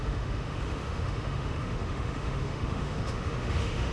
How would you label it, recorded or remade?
remade